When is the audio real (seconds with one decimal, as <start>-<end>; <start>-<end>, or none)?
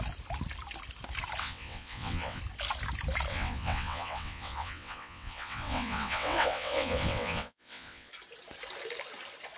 0.0-1.4; 2.4-3.3; 8.1-9.6